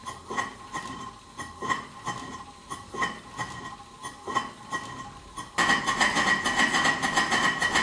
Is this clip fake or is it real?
real